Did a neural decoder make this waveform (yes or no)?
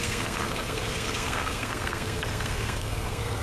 yes